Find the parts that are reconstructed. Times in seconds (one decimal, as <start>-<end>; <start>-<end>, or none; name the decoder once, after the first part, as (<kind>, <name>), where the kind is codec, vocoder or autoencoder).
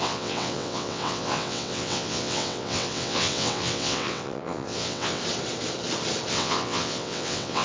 0.0-5.2 (vocoder, WaveNeXt); 6.3-7.6